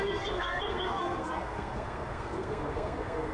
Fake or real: fake